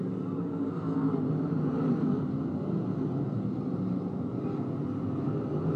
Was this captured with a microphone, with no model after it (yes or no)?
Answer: yes